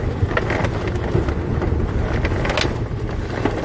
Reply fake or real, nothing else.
real